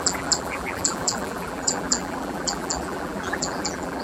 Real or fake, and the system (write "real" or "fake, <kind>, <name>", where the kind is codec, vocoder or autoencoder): fake, vocoder, BigVGAN v2